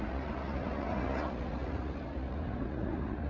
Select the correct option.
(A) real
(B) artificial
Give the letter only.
B